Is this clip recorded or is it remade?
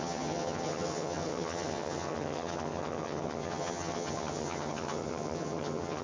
remade